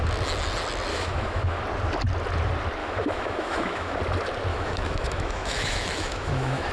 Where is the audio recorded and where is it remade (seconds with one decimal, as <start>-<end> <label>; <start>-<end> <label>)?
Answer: 0.0-0.9 recorded; 0.9-1.6 remade; 1.6-2.8 recorded; 2.8-4.0 remade; 4.0-4.5 recorded; 4.5-6.7 remade

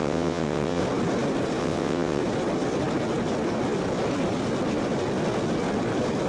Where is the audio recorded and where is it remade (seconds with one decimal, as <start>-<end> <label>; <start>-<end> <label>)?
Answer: 0.0-0.8 remade; 0.8-1.6 recorded; 1.6-2.2 remade; 2.2-6.3 recorded

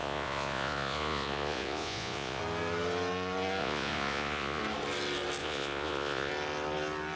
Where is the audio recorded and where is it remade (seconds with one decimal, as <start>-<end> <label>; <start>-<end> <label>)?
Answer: 0.0-2.4 remade; 2.4-3.6 recorded; 3.6-4.6 remade; 4.6-5.4 recorded; 5.4-6.3 remade; 6.3-7.2 recorded

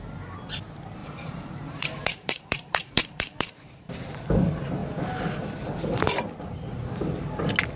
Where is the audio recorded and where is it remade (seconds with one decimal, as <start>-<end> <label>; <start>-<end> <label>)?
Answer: 0.0-1.0 recorded; 1.0-4.2 remade; 4.2-7.8 recorded